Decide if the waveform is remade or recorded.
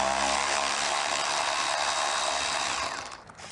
recorded